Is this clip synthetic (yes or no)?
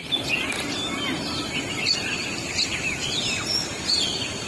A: no